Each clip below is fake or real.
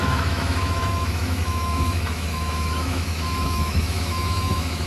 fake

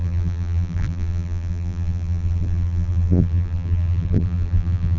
fake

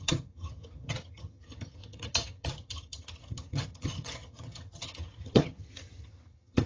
fake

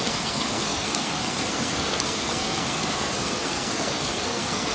fake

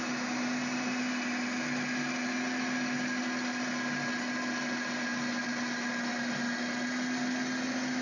real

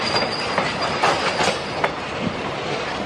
real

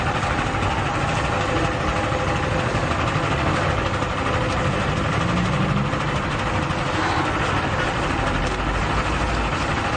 real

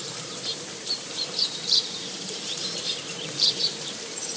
fake